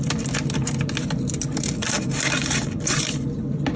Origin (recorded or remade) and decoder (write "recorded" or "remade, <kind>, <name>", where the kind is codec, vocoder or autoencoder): recorded